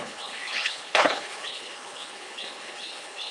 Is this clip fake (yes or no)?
yes